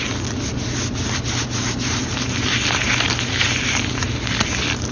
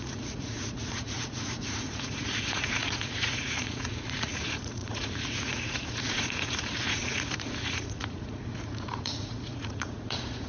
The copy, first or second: second